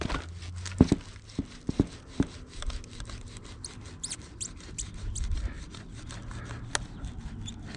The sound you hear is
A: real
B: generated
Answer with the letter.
A